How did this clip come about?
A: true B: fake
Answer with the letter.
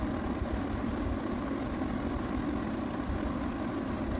B